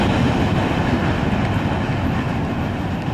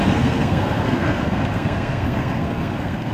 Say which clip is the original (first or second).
first